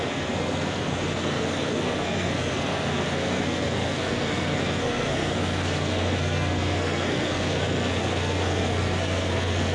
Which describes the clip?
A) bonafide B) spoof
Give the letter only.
B